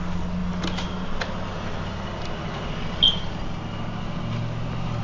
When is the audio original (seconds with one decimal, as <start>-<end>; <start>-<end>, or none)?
0.0-5.0